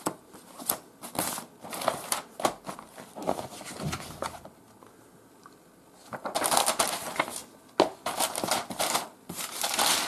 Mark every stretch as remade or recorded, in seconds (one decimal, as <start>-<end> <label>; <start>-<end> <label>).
0.0-10.1 recorded